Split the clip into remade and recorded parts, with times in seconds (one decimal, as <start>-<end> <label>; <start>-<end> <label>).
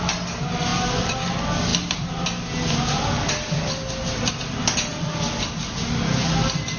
0.0-6.8 recorded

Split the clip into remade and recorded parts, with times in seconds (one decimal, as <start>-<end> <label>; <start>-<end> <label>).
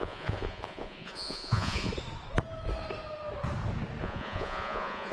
0.0-1.9 remade; 1.9-4.0 recorded; 4.0-5.1 remade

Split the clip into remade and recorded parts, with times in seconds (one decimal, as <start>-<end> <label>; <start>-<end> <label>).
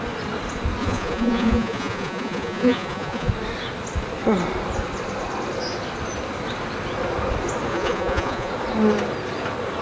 0.0-0.8 recorded; 0.8-3.3 remade; 3.3-7.7 recorded; 7.7-8.5 remade; 8.5-9.8 recorded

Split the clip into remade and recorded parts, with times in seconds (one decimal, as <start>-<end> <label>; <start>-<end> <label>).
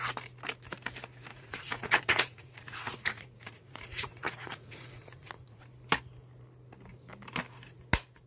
0.0-1.3 recorded; 1.3-5.6 remade; 5.6-8.3 recorded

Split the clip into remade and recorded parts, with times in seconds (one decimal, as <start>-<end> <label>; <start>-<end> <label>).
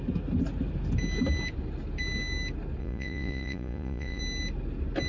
0.0-2.8 recorded; 2.8-4.2 remade; 4.2-5.1 recorded